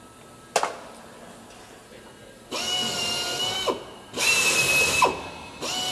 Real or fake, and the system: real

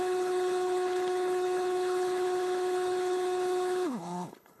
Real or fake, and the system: fake, codec, HILCodec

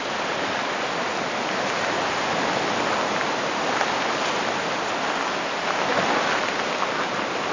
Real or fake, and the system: real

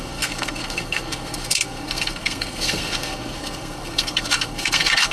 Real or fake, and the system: fake, codec, SNAC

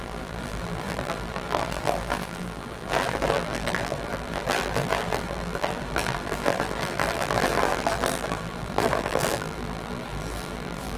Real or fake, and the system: fake, vocoder, BigVGAN v2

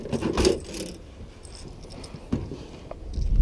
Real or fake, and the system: real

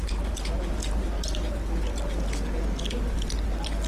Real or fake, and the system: real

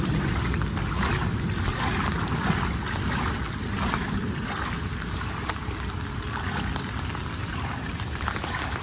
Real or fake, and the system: real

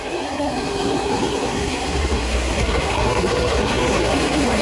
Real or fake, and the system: fake, codec, SNAC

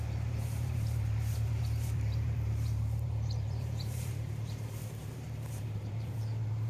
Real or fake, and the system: fake, vocoder, BigVGAN v2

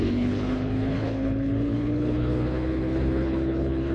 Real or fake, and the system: fake, codec, HILCodec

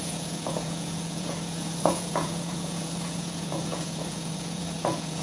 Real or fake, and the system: fake, vocoder, Vocos